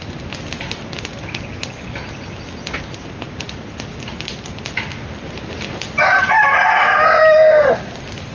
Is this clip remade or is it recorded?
recorded